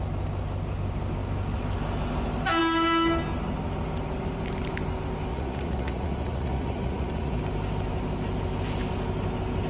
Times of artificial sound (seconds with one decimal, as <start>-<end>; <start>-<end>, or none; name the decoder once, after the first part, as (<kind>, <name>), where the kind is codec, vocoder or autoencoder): 5.3-7.4 (vocoder, Vocos)